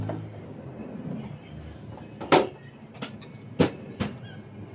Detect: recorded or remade recorded